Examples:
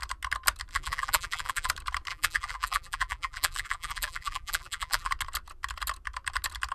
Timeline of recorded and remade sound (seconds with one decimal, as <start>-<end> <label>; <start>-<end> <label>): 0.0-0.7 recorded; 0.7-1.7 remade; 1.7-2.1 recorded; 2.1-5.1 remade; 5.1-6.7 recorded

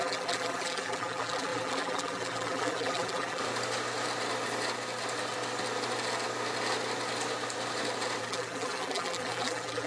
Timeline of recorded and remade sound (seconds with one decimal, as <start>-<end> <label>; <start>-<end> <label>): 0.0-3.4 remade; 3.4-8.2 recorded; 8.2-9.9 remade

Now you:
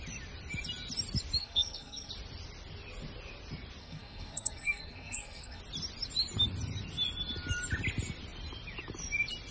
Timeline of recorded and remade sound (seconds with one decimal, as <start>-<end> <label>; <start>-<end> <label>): 0.0-1.4 recorded; 1.4-2.1 remade; 2.1-3.8 recorded; 3.8-5.6 remade; 5.6-9.5 recorded